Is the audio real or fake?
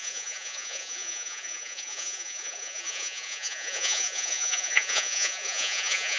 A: fake